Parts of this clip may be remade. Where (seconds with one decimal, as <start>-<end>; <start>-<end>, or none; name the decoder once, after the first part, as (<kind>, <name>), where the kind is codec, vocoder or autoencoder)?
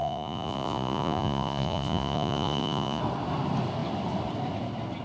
0.0-3.0 (vocoder, Vocos)